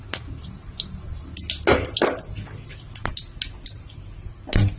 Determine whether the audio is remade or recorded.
recorded